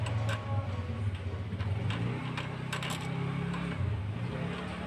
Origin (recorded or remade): recorded